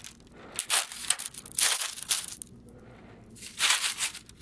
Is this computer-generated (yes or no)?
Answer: no